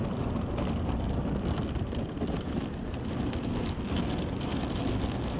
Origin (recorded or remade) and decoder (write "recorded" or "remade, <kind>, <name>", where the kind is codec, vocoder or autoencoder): recorded